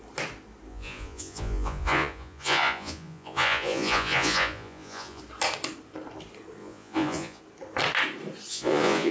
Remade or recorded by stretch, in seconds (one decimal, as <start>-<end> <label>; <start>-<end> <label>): 0.0-0.7 recorded; 0.7-5.2 remade; 5.2-6.6 recorded; 6.6-7.4 remade; 7.4-8.5 recorded; 8.5-9.1 remade